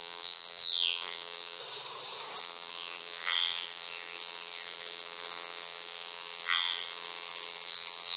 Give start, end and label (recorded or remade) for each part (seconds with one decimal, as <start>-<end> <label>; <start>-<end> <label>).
0.0-1.6 remade; 1.6-2.4 recorded; 2.4-8.2 remade